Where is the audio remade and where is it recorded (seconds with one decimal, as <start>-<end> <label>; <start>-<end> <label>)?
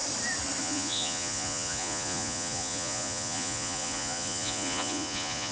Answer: 0.0-0.6 recorded; 0.6-5.5 remade